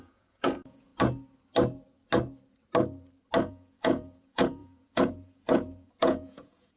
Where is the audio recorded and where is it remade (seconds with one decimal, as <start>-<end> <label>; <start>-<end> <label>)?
0.0-0.9 remade; 0.9-3.5 recorded; 3.5-6.8 remade